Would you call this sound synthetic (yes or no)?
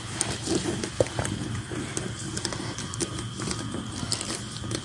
no